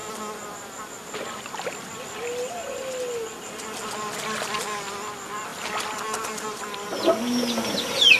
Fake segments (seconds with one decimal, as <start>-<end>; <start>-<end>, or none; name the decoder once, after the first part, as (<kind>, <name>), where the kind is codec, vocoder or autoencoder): none